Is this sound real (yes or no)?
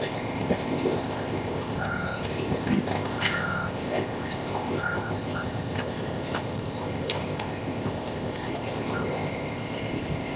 no